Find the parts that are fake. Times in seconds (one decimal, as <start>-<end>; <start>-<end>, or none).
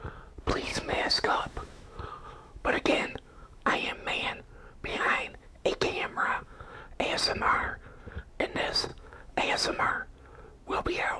0.7-3.7; 4.9-6.8; 8.9-9.9